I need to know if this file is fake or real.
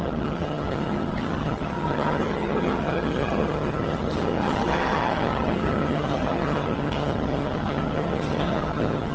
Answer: fake